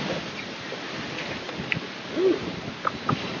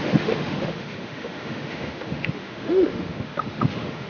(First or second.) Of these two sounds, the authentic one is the first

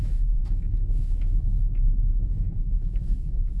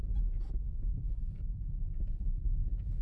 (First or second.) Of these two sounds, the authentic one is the second